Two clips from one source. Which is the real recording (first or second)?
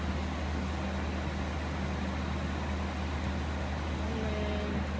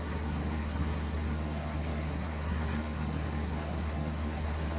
first